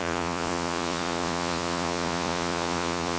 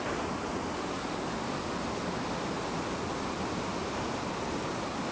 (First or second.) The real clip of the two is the second